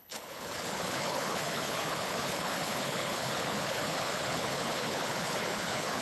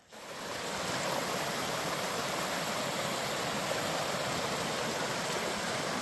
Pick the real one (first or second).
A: second